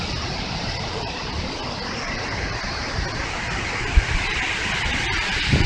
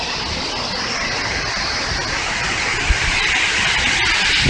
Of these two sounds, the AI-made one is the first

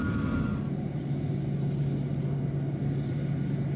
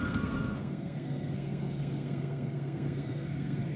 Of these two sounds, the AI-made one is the second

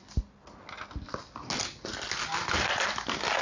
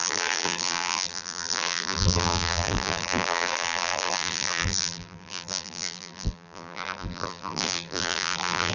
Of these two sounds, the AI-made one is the second